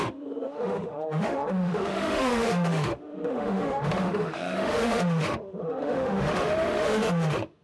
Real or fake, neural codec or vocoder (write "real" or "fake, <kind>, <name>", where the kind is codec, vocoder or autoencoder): fake, autoencoder, DAC-VAE